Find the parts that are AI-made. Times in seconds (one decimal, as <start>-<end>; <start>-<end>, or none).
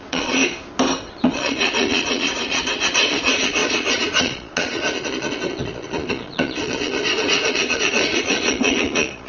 0.0-0.4; 1.1-9.3